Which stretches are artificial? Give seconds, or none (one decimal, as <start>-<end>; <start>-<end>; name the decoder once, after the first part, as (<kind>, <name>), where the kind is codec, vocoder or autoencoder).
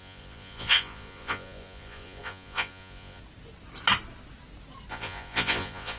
0.0-3.2 (vocoder, Vocos); 4.9-6.0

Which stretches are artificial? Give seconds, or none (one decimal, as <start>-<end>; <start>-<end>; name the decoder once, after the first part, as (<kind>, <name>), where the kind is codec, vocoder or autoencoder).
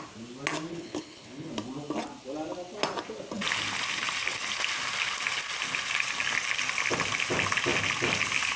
0.7-1.5 (codec, HILCodec)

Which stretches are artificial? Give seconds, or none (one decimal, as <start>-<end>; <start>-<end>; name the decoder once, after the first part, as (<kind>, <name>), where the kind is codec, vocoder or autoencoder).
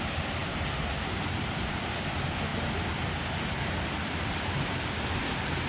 none